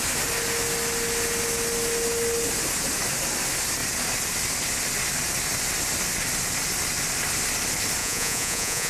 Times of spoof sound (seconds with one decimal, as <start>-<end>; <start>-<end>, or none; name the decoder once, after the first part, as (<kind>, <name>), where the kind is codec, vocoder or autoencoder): 8.0-8.9 (vocoder, Vocos)